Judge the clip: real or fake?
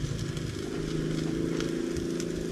real